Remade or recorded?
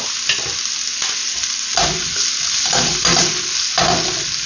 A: recorded